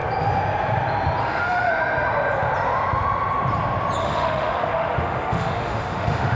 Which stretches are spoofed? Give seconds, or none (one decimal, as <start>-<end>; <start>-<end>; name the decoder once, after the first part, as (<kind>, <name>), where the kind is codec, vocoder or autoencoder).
1.2-1.7 (autoencoder, DAC-VAE); 4.0-6.4